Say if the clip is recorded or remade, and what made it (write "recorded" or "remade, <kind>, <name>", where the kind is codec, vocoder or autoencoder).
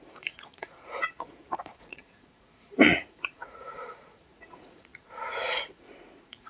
remade, vocoder, Vocos